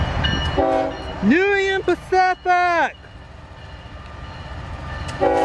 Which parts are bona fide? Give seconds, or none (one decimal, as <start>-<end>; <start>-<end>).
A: 0.0-5.4